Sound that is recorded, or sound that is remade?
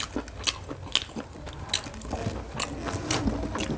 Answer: recorded